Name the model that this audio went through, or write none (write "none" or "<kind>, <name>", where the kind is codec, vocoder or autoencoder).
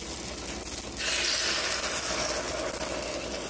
none